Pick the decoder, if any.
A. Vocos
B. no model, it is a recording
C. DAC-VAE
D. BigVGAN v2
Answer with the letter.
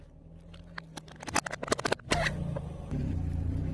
B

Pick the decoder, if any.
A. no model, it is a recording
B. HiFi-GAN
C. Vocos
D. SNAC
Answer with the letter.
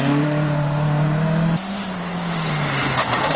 A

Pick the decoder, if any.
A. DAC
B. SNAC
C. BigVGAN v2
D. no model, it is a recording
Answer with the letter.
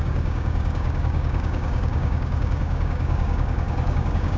A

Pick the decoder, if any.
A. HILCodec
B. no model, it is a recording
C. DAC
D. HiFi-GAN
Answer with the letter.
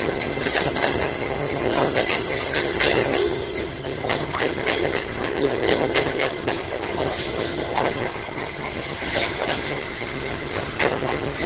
D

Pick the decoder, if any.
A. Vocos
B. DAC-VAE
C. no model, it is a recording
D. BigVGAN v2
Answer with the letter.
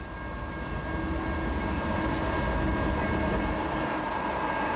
C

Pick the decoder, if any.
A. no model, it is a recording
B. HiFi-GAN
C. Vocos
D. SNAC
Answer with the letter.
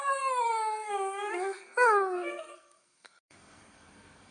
D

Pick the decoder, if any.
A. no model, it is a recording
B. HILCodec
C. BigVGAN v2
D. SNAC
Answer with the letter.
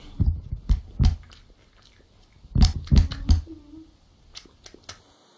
A